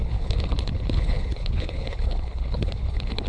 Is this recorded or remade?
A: remade